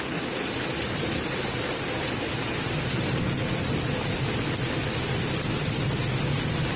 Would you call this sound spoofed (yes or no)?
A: no